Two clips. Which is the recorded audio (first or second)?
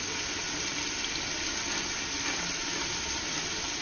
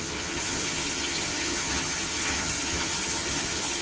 first